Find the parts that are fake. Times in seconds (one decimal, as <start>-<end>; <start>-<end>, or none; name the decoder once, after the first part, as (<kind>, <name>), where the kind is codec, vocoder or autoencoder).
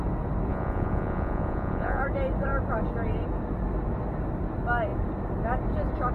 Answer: 0.5-2.0 (vocoder, Vocos)